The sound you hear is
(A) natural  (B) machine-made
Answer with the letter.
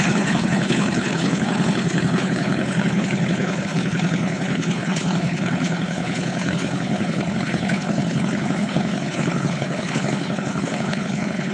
B